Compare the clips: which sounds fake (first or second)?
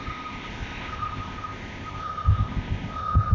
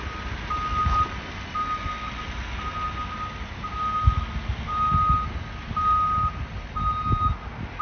first